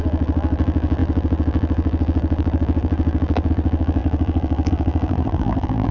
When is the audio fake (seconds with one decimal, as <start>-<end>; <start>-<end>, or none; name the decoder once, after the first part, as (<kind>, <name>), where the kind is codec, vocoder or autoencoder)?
0.0-5.9 (vocoder, BigVGAN v2)